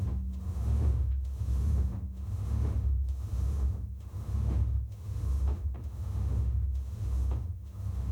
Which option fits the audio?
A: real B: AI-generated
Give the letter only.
B